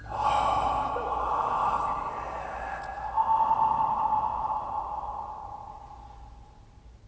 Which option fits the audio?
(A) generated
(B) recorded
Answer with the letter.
B